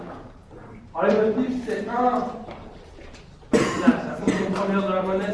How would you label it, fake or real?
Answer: fake